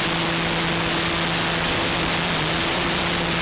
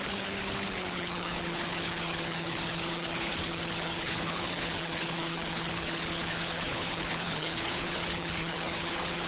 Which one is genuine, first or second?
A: first